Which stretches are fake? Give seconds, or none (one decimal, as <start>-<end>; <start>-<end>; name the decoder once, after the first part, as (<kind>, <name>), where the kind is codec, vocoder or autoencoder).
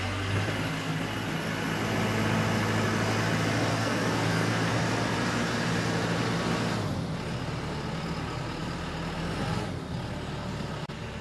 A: 3.7-4.7 (codec, SNAC)